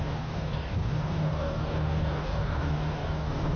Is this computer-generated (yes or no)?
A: yes